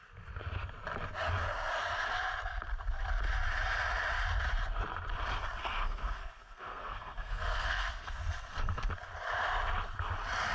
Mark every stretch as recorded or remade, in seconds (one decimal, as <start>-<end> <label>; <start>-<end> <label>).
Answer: 0.0-5.6 recorded; 5.6-8.9 remade; 8.9-10.5 recorded